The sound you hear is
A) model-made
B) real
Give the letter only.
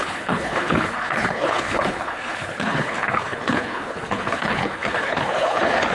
A